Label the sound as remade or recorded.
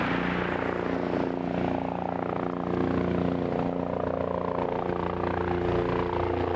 recorded